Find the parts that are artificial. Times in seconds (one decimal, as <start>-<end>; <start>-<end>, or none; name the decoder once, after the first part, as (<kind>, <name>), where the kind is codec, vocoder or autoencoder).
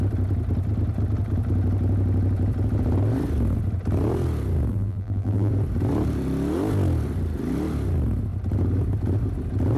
4.7-5.5 (vocoder, BigVGAN v2)